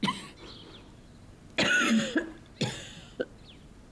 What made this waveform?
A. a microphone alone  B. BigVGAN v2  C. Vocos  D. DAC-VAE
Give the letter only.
A